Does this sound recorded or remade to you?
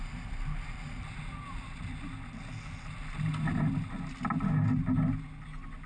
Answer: recorded